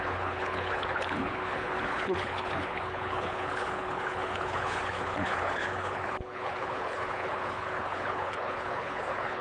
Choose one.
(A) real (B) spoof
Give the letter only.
B